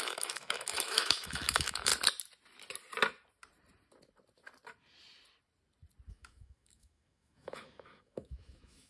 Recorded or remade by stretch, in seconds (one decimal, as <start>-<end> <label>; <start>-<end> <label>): 0.0-1.9 remade; 1.9-6.1 recorded; 6.1-8.9 remade